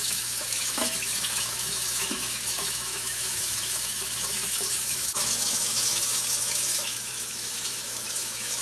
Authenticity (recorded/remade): remade